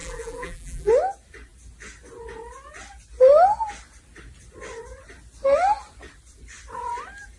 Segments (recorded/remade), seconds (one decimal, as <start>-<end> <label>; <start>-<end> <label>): 0.0-0.9 remade; 0.9-7.4 recorded